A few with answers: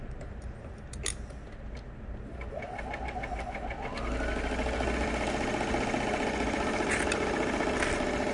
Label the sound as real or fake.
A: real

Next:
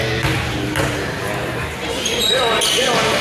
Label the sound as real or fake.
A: real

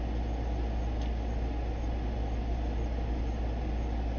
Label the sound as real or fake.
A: real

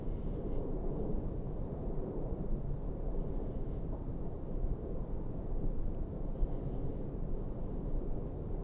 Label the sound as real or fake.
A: fake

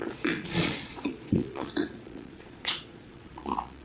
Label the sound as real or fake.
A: fake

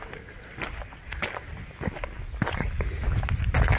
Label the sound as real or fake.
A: real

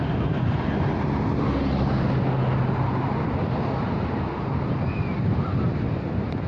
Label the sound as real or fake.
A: real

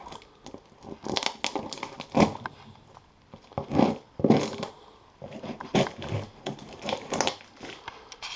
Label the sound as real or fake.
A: real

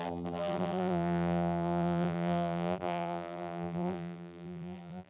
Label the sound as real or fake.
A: fake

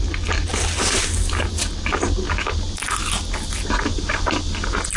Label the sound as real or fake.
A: real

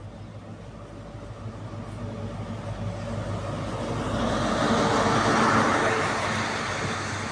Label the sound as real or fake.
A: real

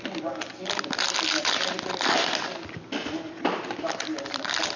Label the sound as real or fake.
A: real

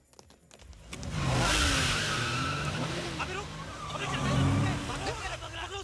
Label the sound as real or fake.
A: real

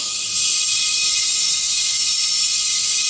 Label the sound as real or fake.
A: fake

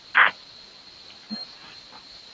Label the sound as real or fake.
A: real